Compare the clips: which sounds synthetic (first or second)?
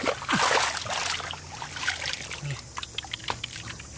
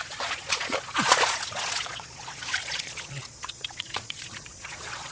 second